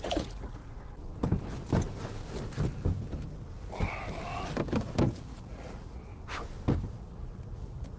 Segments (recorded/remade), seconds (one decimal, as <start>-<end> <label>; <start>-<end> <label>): 0.0-0.6 remade; 0.6-5.1 recorded; 5.1-6.1 remade; 6.1-6.9 recorded; 6.9-8.0 remade

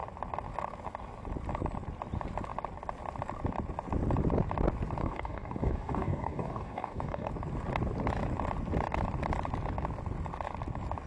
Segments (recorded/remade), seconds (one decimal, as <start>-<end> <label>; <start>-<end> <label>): 0.0-5.0 recorded; 5.0-7.3 remade; 7.3-11.1 recorded

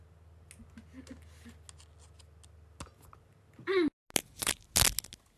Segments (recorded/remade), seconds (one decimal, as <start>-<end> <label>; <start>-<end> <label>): 0.0-5.4 recorded

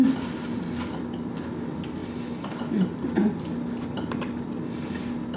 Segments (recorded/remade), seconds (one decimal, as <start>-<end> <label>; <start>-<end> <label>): 0.0-5.4 recorded